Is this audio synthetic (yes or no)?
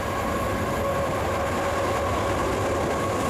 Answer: no